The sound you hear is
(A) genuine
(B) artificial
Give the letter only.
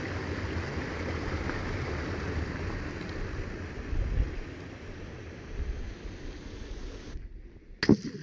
A